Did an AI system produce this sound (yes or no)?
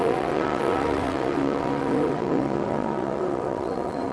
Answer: yes